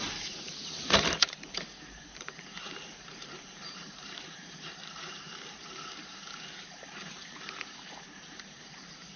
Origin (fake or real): fake